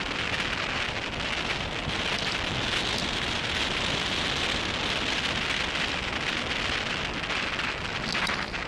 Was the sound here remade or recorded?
recorded